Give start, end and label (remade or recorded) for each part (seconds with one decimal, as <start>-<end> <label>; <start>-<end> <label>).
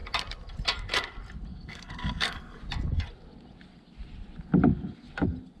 0.0-1.5 recorded; 1.5-2.6 remade; 2.6-5.6 recorded